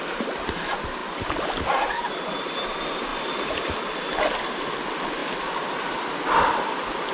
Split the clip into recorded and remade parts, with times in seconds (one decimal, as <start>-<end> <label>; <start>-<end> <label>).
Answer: 0.0-7.1 recorded